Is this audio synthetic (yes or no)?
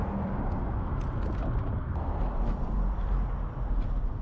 no